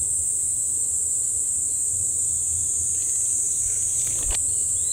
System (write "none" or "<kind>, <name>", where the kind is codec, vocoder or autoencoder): none